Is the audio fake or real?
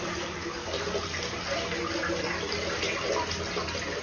real